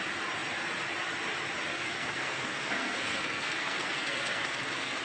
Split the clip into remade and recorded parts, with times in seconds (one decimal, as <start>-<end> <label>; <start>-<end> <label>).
0.0-1.7 recorded; 1.7-5.0 remade